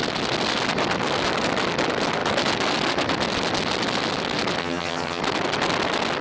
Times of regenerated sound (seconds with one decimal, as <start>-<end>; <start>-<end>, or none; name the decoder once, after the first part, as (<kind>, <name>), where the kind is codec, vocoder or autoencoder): 4.6-5.2 (vocoder, HiFi-GAN)